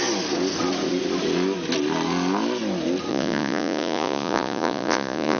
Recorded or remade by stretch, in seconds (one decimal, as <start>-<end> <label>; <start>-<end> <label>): 0.0-3.1 recorded; 3.1-5.4 remade

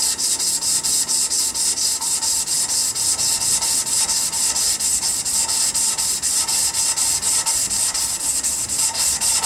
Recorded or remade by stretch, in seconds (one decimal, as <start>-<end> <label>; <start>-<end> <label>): 0.0-9.5 recorded

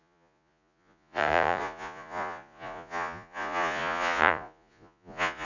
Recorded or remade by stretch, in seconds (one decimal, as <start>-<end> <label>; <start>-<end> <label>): 0.0-5.4 remade